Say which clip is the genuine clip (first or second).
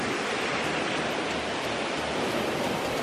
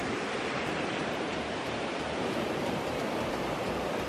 first